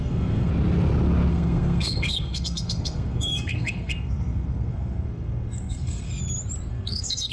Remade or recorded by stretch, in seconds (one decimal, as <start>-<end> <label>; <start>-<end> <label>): 0.0-0.5 remade; 0.5-1.3 recorded; 1.3-6.0 remade; 6.0-6.7 recorded; 6.7-7.3 remade